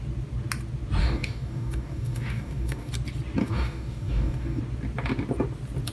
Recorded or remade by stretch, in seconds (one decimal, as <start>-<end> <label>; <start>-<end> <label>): 0.0-1.0 recorded; 1.0-2.9 remade; 2.9-3.4 recorded; 3.4-4.6 remade; 4.6-5.9 recorded